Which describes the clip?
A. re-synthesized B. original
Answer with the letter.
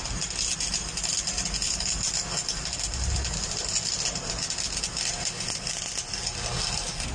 B